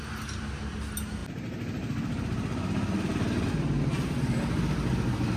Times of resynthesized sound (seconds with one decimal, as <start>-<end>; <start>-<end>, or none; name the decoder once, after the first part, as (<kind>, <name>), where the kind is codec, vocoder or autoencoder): none